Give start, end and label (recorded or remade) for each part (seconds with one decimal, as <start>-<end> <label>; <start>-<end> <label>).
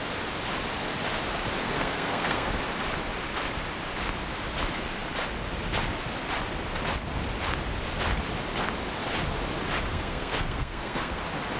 0.0-1.6 recorded; 1.6-2.6 remade; 2.6-9.9 recorded; 9.9-11.2 remade; 11.2-11.6 recorded